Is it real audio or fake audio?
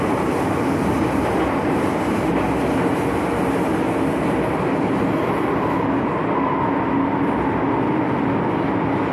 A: real